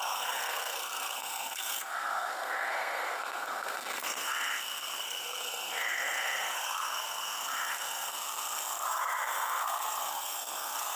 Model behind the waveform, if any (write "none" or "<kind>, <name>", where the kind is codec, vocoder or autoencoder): codec, SNAC